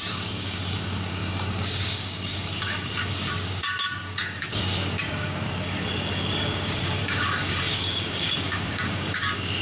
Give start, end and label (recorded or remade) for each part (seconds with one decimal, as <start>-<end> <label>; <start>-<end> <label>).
0.0-9.6 remade